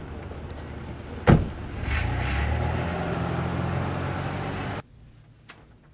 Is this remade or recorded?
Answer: recorded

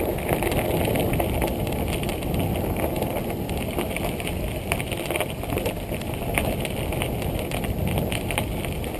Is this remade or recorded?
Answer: recorded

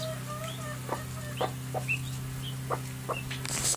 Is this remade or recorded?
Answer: recorded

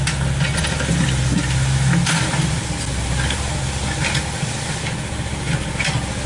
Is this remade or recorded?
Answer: recorded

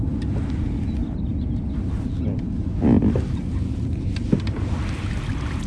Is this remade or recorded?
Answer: recorded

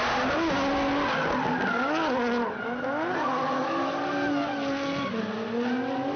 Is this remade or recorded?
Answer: recorded